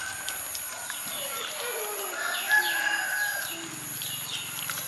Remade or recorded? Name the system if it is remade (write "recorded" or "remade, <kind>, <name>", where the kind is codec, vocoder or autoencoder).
recorded